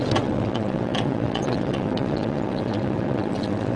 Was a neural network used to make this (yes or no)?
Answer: yes